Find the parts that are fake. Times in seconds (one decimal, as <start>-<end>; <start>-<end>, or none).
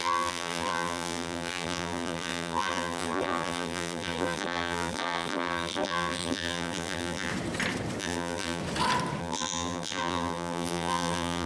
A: 0.0-7.3; 8.0-8.6; 9.2-11.5